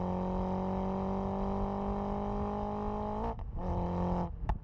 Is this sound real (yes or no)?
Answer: yes